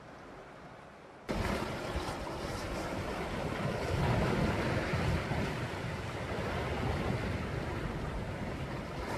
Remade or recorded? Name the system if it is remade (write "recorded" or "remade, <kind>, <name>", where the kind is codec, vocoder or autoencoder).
recorded